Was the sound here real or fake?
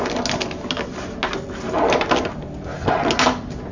real